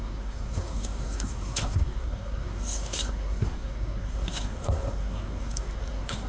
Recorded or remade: remade